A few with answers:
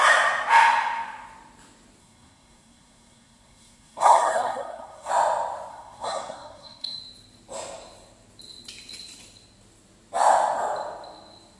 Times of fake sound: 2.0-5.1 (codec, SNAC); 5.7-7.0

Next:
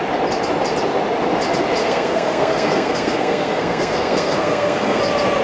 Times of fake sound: 1.8-5.0 (codec, SNAC)

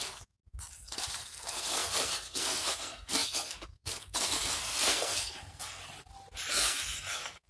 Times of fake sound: 0.0-5.8 (codec, SNAC); 6.5-7.5

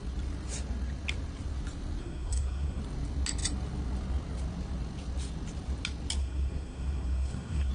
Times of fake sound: 2.0-2.8 (codec, SNAC); 6.2-7.7

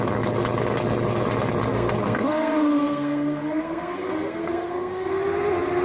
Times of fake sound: 1.7-5.2 (codec, SNAC)